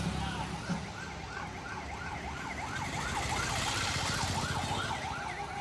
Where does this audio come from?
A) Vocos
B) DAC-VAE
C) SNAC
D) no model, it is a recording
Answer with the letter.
D